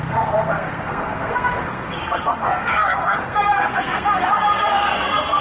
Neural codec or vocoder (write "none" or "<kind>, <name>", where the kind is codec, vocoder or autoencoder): codec, SNAC